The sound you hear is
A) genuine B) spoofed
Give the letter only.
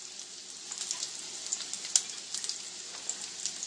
A